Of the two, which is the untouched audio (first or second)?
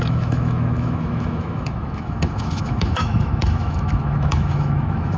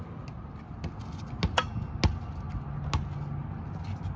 second